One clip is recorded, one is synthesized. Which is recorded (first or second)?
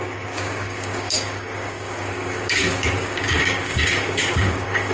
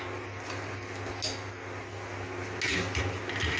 second